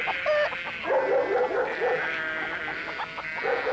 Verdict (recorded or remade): recorded